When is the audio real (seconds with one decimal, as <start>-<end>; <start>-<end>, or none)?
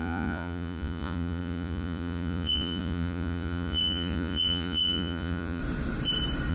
5.6-6.5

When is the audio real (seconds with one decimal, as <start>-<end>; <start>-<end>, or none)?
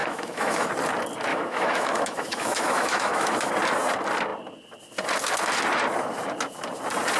0.7-1.3; 3.5-7.2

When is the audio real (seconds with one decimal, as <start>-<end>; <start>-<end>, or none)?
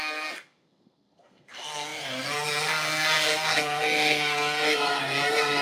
none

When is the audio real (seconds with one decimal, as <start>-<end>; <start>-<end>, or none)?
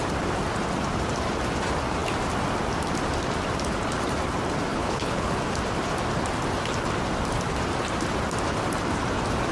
0.0-4.7; 5.4-9.5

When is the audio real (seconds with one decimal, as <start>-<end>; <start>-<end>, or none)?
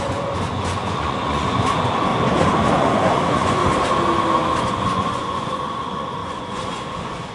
2.1-2.7; 3.6-4.6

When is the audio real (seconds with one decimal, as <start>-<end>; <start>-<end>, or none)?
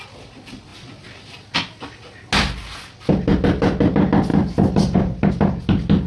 0.0-6.1